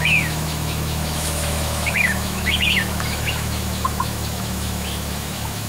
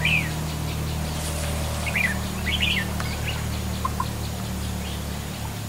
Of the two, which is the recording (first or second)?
second